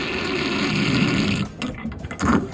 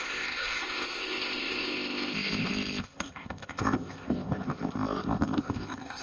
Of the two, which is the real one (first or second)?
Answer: first